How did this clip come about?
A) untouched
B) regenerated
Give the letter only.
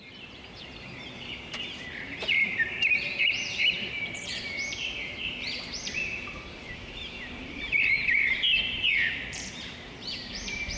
B